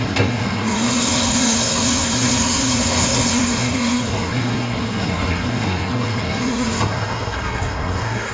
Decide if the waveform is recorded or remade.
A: remade